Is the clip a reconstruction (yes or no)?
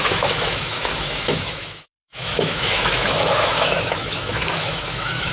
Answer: yes